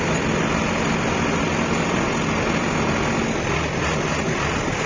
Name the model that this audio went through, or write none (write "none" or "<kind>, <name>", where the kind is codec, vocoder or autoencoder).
none